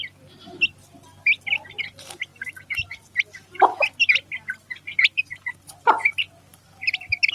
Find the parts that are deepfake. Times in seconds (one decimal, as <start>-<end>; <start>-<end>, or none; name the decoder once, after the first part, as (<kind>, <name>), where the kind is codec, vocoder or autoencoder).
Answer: none

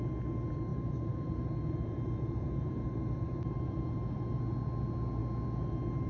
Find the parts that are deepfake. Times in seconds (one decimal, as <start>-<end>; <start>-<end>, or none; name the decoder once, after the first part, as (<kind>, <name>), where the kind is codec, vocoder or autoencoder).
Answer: 0.7-4.4 (vocoder, BigVGAN v2)

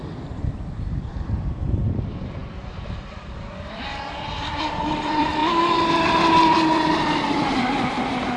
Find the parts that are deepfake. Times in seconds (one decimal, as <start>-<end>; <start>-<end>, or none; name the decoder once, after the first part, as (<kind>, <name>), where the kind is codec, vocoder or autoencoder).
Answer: 0.0-2.4 (vocoder, BigVGAN v2); 3.1-5.4; 7.0-8.4